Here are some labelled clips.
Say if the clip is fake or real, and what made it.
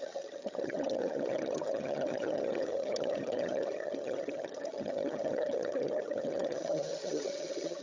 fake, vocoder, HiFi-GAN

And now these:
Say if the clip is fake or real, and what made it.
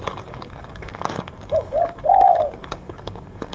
fake, codec, DAC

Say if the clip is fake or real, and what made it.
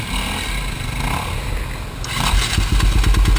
real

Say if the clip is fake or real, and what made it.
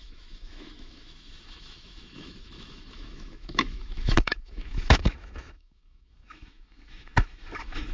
fake, autoencoder, DAC-VAE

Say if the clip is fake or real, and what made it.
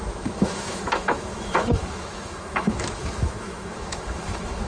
fake, autoencoder, DAC-VAE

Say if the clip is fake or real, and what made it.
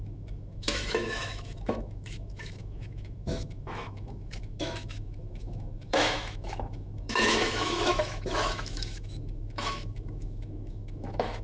fake, autoencoder, DAC-VAE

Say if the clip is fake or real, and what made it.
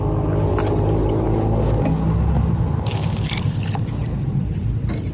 real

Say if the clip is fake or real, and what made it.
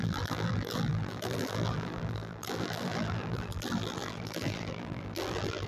fake, vocoder, BigVGAN v2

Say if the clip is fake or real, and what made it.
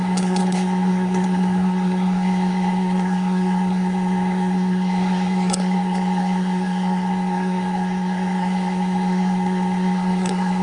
fake, codec, SNAC